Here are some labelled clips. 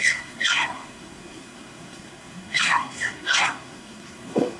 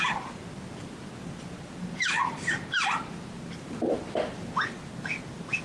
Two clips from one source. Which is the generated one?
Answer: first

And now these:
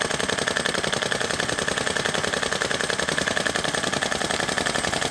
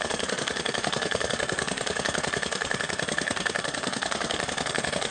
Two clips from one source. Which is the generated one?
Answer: second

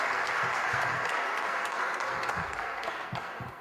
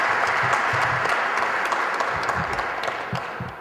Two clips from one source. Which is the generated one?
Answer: first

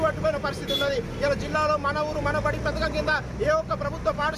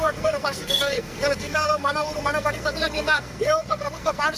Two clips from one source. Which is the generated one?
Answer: second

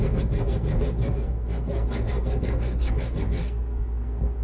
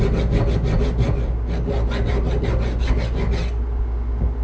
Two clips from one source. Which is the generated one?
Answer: first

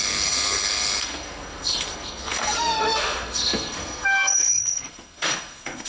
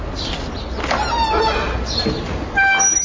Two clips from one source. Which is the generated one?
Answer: first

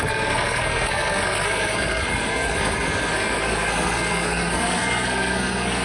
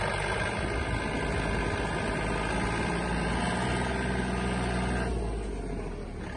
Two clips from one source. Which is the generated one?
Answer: first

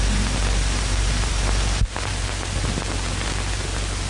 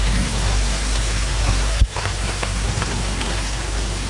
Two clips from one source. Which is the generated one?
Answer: second